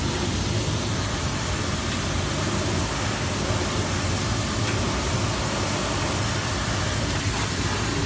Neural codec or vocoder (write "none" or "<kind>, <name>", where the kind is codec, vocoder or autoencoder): none